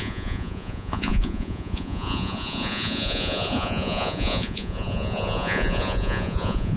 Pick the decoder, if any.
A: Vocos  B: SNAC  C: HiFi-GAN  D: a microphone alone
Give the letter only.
A